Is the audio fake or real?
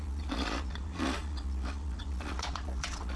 fake